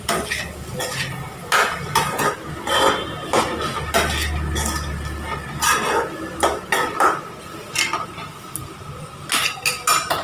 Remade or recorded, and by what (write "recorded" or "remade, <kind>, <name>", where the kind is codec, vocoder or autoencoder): recorded